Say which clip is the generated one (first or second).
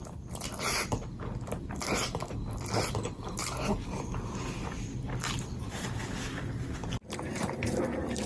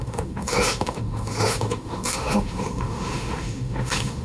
second